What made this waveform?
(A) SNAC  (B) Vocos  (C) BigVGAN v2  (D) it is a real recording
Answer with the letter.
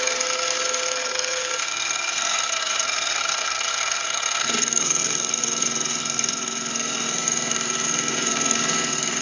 A